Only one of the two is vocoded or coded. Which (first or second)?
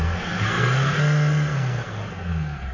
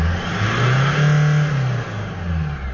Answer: first